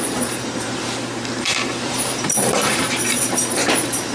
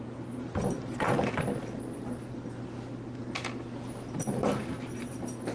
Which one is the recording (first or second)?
second